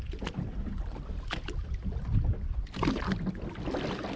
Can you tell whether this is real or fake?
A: real